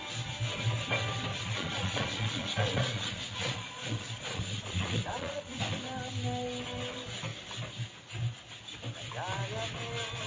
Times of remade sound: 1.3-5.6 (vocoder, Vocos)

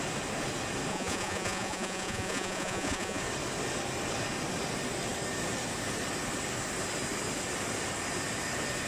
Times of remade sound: 0.9-3.2 (vocoder, Vocos)

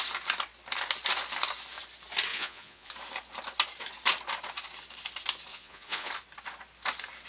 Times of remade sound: 2.3-2.9 (vocoder, Vocos); 5.5-6.1

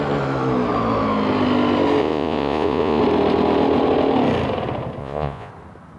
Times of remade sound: 2.0-3.0 (vocoder, Vocos); 5.0-5.5

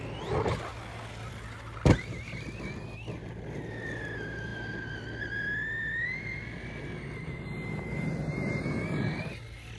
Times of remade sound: none

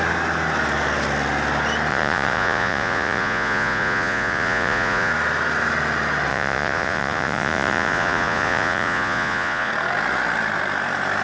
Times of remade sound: 1.9-5.1 (vocoder, Vocos); 6.3-9.7